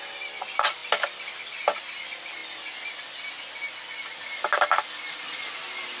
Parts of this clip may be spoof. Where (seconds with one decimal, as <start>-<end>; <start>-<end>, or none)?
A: none